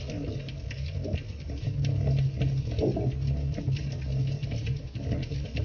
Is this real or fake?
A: real